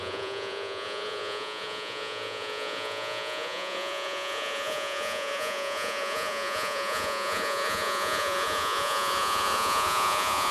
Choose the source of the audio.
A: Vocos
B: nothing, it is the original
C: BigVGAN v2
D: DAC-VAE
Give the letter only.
A